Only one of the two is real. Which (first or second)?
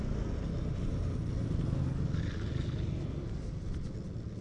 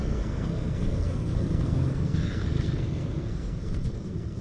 first